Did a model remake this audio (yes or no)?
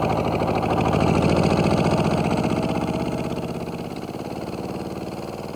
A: no